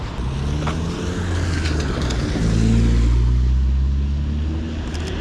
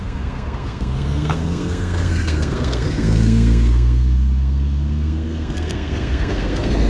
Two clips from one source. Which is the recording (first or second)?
first